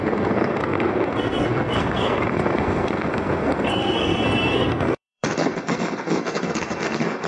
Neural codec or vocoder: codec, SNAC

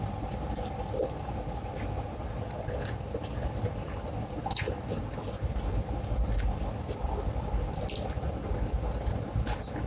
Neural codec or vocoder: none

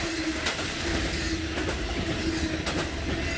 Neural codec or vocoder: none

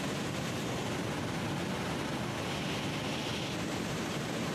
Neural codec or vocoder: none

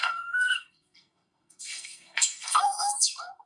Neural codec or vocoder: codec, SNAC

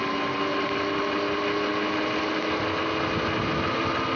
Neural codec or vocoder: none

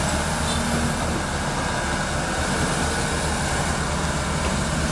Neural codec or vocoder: none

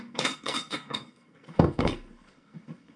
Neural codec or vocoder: codec, SNAC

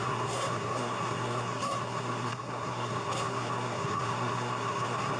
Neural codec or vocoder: codec, SNAC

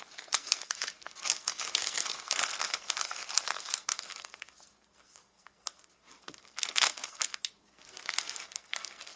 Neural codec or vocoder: codec, SNAC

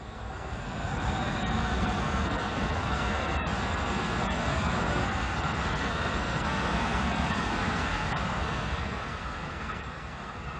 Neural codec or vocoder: codec, SNAC